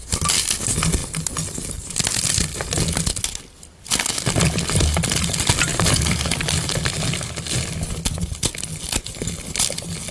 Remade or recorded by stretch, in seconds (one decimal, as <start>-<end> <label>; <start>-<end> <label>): 0.0-10.1 recorded